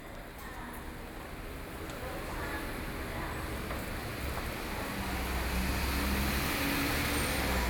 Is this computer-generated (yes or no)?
no